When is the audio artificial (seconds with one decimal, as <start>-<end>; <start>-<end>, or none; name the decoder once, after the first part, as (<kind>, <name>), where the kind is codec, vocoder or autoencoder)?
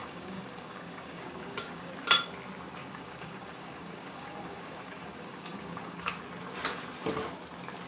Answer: 0.0-1.9 (codec, DAC); 2.8-6.2